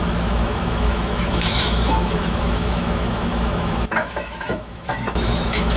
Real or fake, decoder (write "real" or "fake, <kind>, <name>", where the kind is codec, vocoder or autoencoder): fake, autoencoder, DAC-VAE